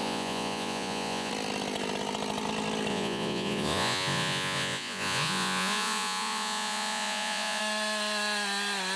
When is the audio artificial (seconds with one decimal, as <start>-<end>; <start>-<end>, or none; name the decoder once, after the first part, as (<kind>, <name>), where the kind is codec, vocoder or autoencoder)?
0.0-1.3 (vocoder, Vocos); 2.9-7.6

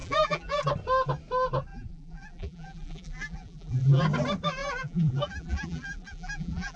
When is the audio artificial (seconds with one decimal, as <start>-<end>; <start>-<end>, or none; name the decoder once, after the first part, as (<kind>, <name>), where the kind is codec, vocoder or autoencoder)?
0.0-0.6 (vocoder, BigVGAN v2); 1.7-4.0; 4.6-6.8

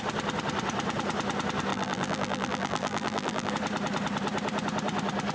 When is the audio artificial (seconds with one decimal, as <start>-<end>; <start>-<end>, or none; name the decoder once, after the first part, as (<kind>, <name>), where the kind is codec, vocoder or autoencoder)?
1.7-3.5 (vocoder, BigVGAN v2)

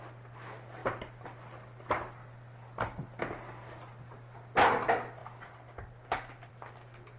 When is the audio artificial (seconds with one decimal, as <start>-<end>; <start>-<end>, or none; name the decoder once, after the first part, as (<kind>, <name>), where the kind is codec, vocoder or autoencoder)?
none

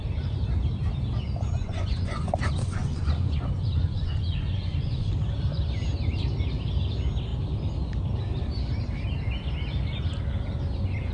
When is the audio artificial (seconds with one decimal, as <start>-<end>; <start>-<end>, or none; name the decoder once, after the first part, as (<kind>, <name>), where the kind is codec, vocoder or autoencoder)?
1.6-5.1 (vocoder, Vocos)

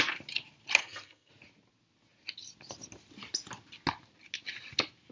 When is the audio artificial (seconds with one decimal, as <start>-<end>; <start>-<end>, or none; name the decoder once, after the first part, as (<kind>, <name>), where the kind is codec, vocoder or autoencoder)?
0.8-1.3 (codec, SNAC)

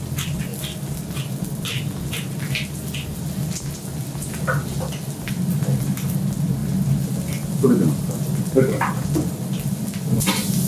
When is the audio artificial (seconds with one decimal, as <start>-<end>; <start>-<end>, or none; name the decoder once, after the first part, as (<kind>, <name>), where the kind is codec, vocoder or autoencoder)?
none